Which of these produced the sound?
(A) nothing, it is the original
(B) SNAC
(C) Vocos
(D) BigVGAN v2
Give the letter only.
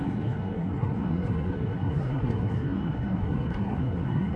B